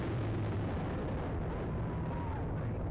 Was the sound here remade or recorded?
recorded